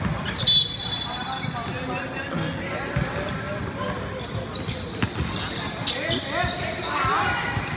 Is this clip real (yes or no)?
yes